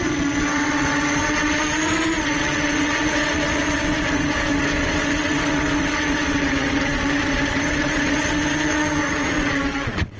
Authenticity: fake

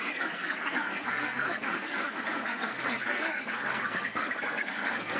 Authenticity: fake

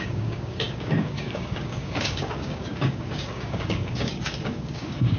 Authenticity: fake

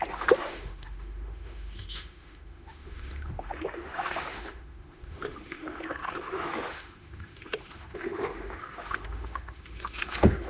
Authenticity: fake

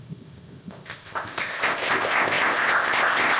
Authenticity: fake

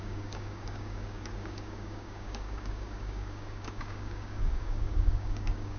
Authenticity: fake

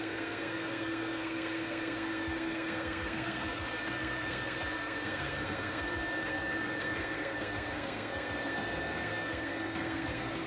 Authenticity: fake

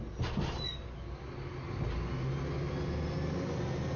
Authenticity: real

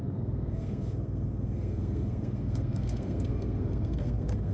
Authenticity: fake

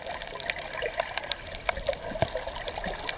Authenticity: real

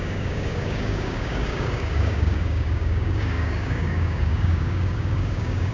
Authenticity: fake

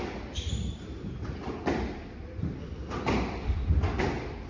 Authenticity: real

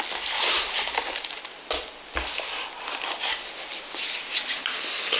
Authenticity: real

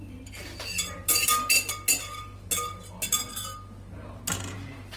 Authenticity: real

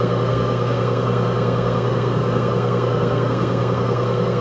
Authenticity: fake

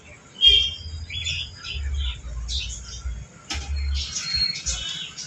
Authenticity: real